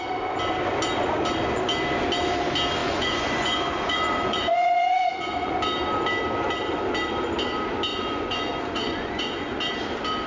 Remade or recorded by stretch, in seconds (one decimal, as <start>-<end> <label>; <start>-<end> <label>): 0.0-2.8 recorded; 2.8-5.5 remade; 5.5-7.9 recorded; 7.9-9.6 remade; 9.6-10.3 recorded